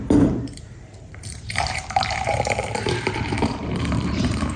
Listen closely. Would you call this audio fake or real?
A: fake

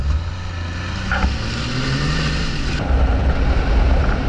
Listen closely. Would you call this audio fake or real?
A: real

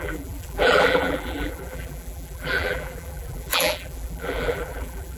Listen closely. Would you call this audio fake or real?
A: fake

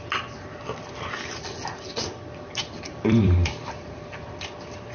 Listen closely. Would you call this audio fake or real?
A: fake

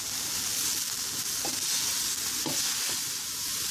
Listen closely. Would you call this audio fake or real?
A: real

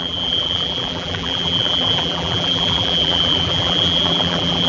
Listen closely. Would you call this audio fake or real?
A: fake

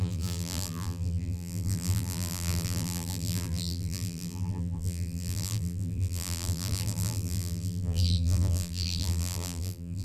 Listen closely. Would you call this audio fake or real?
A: fake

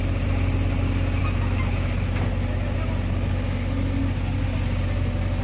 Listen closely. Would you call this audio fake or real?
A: real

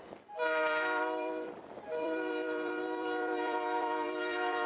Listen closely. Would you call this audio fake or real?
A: fake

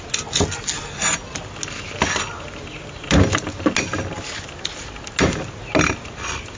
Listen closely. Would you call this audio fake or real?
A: real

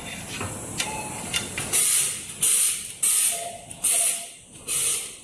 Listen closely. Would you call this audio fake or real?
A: fake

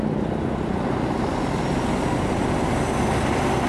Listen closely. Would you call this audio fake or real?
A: real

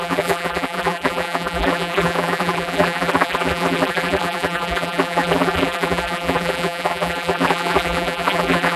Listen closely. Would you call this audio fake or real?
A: fake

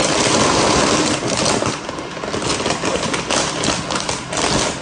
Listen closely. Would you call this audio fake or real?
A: real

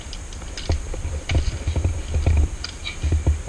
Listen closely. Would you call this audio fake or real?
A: fake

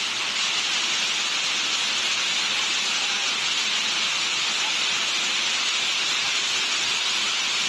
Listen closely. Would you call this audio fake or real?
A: real